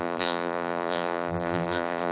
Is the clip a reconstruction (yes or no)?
yes